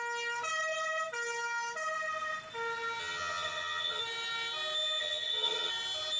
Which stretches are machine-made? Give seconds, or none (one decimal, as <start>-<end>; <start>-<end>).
3.0-4.0; 5.0-5.7